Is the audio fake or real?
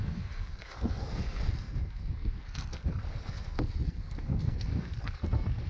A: fake